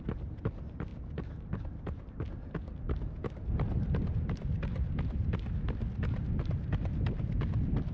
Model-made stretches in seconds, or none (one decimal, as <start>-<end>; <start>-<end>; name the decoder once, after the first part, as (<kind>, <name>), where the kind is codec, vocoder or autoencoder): none